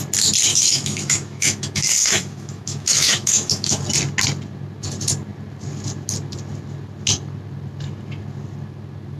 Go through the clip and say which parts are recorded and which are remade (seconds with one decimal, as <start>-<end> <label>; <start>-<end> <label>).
0.0-0.5 recorded; 0.5-3.8 remade; 3.8-9.2 recorded

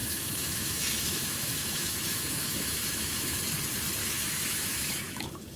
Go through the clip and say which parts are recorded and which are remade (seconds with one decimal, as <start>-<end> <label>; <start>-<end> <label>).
0.0-3.4 remade; 3.4-4.0 recorded; 4.0-5.6 remade

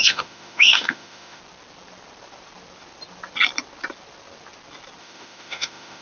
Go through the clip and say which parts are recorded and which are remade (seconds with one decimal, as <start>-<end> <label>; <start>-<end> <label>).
0.0-1.4 remade; 1.4-5.0 recorded; 5.0-6.0 remade

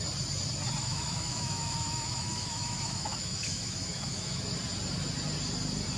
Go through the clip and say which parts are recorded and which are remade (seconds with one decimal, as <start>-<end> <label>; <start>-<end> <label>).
0.0-0.8 recorded; 0.8-4.4 remade; 4.4-6.0 recorded

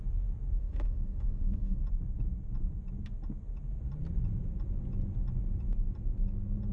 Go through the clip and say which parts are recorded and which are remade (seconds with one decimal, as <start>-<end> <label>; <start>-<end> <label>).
0.0-0.6 recorded; 0.6-1.8 remade; 1.8-6.7 recorded